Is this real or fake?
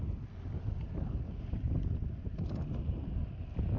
real